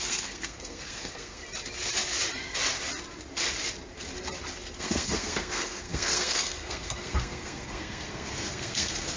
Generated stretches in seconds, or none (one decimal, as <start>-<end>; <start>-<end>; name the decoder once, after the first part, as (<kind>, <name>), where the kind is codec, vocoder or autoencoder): 0.0-1.4 (codec, SNAC); 4.8-9.2